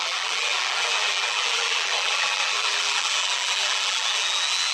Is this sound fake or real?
fake